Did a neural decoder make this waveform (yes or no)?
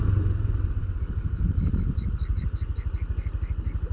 no